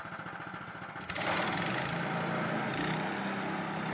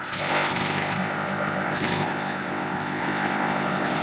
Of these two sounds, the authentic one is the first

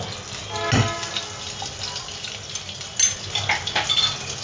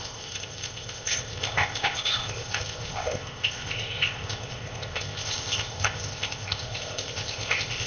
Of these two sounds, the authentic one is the first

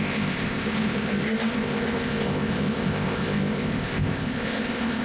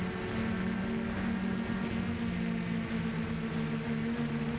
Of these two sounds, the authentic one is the second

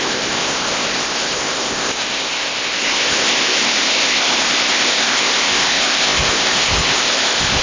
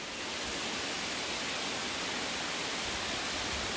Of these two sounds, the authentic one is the second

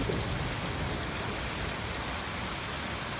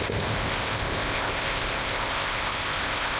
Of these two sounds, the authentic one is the first